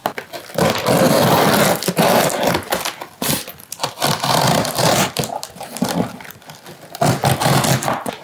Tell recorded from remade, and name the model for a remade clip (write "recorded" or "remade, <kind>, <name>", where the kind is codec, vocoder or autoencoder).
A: recorded